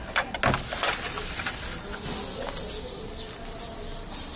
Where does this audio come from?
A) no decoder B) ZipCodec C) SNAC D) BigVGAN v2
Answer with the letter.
A